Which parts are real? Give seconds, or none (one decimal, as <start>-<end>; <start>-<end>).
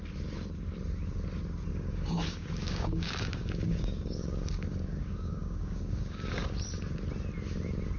0.0-1.7; 6.5-8.0